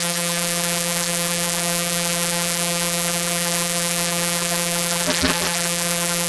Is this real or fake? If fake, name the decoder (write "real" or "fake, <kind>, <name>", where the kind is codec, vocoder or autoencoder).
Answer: fake, vocoder, BigVGAN v2